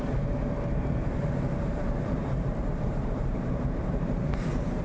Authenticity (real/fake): fake